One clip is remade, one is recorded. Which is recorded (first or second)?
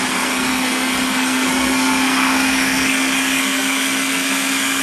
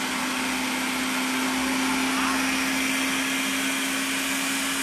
second